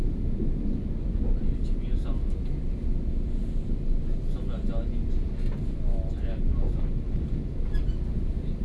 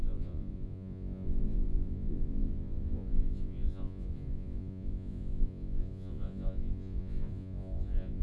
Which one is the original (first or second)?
first